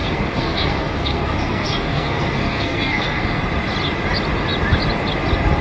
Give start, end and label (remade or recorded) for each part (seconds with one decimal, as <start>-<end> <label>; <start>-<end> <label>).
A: 0.0-3.4 remade; 3.4-5.6 recorded